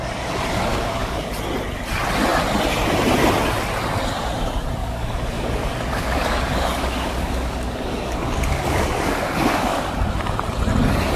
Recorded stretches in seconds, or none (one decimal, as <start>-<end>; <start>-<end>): 0.0-0.7; 1.3-4.8; 9.9-11.2